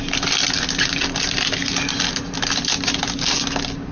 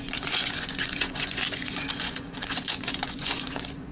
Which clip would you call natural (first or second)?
first